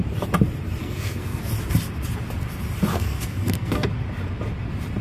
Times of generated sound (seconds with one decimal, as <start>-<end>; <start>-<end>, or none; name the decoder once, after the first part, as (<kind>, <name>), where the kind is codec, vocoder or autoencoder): 0.8-1.4 (codec, SNAC); 2.9-3.9